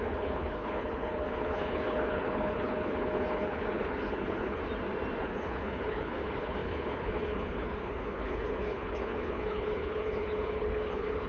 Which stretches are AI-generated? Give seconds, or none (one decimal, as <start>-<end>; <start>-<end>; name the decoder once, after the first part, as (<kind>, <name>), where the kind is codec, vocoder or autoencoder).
0.0-4.6 (codec, HILCodec); 5.2-11.3